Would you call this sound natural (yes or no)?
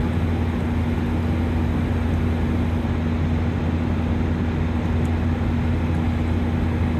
yes